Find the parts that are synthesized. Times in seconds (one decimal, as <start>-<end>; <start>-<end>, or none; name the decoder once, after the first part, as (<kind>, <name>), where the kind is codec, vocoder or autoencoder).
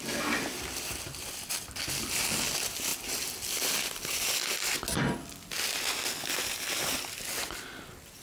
none